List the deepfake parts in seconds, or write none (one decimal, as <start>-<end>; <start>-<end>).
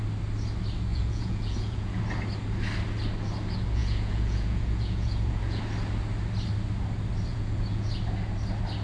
0.9-2.0; 3.8-5.6; 7.3-7.9